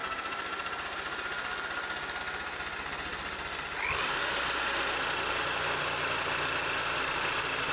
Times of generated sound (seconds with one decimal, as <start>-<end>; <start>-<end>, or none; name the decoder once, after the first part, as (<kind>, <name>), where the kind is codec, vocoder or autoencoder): none